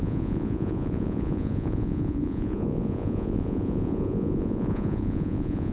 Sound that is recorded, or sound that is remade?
remade